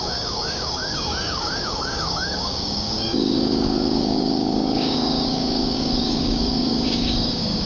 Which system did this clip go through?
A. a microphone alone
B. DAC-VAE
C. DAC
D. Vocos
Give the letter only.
C